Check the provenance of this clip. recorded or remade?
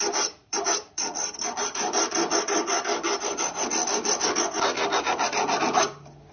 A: remade